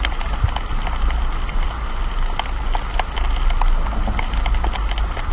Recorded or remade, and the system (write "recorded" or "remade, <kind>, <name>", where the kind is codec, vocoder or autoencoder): recorded